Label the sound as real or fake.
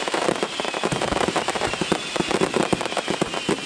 fake